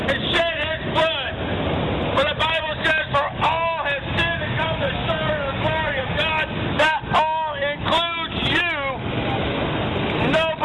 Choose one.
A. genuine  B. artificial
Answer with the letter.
A